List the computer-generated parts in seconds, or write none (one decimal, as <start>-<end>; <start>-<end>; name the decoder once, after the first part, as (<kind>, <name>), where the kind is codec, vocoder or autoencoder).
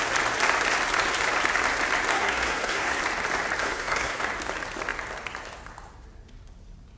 2.1-3.0 (codec, SNAC); 3.6-4.2